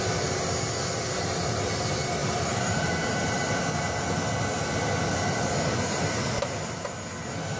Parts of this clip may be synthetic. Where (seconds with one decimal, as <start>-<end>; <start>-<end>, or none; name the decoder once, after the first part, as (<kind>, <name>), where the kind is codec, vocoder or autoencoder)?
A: 2.2-3.5 (vocoder, BigVGAN v2)